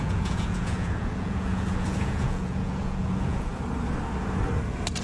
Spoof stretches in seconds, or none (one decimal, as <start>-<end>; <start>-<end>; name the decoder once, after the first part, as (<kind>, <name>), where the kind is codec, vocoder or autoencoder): 0.0-3.5 (vocoder, Vocos)